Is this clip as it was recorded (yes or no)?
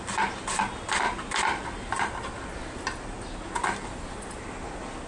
yes